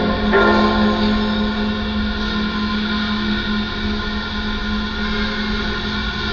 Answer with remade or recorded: recorded